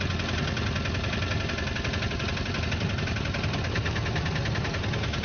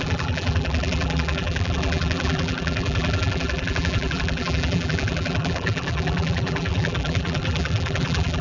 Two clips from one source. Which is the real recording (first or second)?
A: first